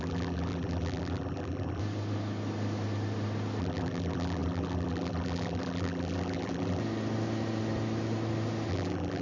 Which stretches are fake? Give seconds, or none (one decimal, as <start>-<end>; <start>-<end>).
0.0-1.8; 3.6-6.8; 8.7-9.2